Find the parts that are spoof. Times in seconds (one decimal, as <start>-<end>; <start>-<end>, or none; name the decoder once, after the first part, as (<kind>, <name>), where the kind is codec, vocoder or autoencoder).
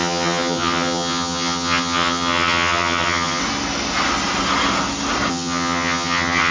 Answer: 0.0-3.4 (vocoder, HiFi-GAN); 5.3-6.5